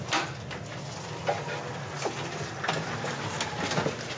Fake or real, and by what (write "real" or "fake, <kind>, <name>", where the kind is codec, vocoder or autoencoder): real